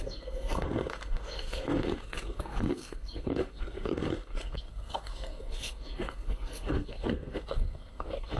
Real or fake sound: fake